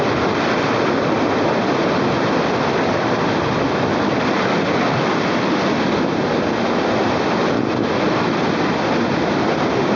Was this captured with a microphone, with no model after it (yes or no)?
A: yes